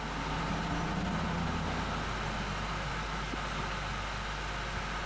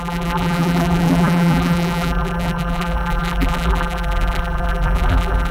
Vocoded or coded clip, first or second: second